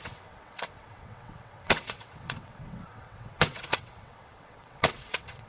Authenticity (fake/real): fake